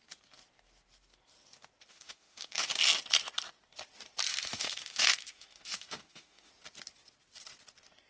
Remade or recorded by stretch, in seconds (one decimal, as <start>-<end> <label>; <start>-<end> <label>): 0.0-1.9 recorded; 1.9-2.7 remade; 2.7-4.3 recorded; 4.3-6.5 remade; 6.5-8.1 recorded